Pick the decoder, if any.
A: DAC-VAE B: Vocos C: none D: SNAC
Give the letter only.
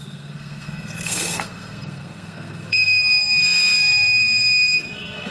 D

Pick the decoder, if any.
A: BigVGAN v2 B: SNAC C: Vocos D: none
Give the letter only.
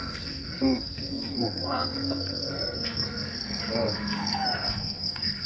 B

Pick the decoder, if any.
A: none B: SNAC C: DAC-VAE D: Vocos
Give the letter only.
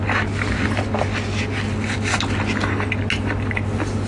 A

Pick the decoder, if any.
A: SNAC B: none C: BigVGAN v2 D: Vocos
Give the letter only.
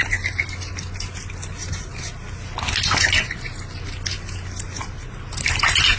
B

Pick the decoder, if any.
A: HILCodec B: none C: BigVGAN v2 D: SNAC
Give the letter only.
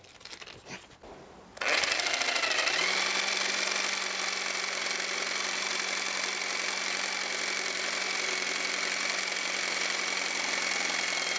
B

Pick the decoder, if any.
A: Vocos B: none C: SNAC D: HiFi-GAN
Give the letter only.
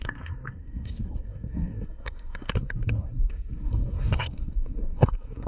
C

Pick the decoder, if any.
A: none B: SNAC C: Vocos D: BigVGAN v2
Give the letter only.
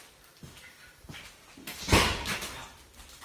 A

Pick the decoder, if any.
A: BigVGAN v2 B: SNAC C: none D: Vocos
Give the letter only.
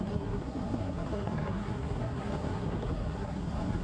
B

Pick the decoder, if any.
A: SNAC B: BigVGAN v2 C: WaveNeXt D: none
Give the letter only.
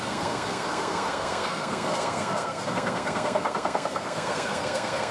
A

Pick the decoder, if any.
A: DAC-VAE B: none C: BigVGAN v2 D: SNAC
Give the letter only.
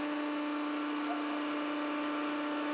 B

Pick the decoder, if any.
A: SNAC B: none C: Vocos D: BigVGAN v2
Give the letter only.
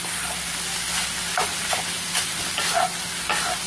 B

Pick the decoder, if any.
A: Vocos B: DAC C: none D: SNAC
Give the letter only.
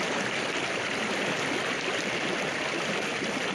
C